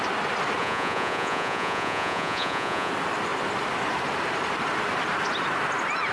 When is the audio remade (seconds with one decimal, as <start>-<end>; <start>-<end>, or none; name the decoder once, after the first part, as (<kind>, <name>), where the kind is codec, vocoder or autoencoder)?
0.6-2.9 (vocoder, Vocos)